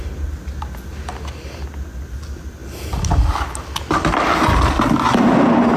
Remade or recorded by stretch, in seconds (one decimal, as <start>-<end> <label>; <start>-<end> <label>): 0.0-5.8 recorded